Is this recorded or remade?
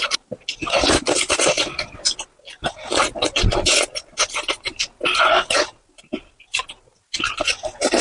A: recorded